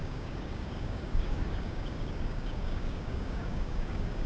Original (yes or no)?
no